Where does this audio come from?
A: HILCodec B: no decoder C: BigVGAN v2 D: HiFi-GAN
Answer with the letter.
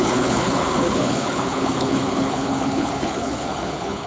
A